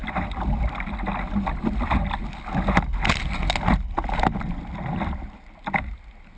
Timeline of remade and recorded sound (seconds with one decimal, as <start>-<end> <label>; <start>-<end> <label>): 0.0-6.4 recorded

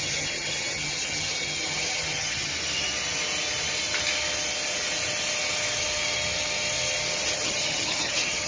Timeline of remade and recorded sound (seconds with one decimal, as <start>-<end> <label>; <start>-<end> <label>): 0.0-2.5 remade; 2.5-7.3 recorded; 7.3-8.5 remade

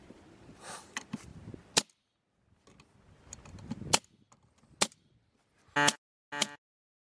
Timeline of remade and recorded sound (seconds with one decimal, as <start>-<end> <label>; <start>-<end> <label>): 0.0-7.1 recorded

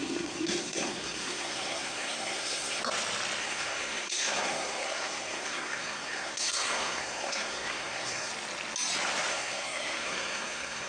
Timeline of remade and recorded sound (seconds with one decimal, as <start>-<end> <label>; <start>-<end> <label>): 0.0-2.8 remade; 2.8-3.4 recorded; 3.4-8.3 remade; 8.3-9.3 recorded; 9.3-10.9 remade